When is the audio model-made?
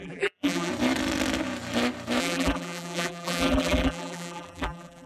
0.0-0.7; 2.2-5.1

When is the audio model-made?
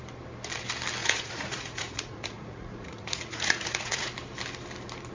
1.0-4.1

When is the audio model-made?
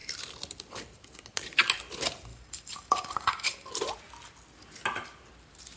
2.3-3.7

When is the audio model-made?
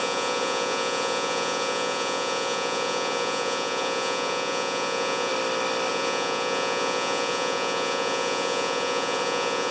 0.0-5.3; 5.9-9.7